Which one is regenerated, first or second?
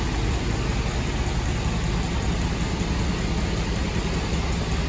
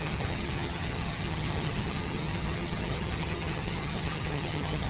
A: second